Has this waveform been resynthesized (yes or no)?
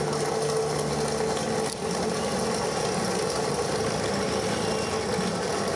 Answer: no